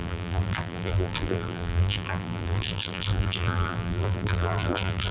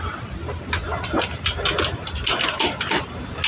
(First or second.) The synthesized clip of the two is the first